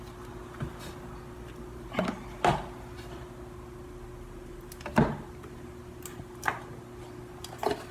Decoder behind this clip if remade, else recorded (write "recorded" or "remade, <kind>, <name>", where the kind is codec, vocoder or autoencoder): recorded